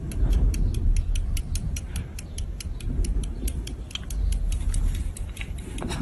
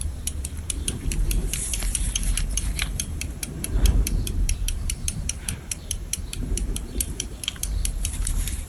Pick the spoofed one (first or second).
second